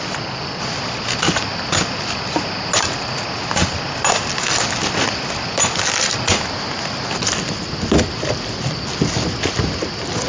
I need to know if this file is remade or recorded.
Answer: recorded